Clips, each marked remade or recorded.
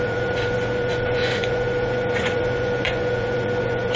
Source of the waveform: remade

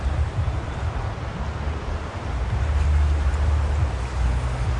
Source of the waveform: recorded